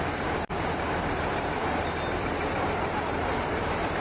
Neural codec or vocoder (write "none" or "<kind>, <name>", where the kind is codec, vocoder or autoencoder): vocoder, BigVGAN v2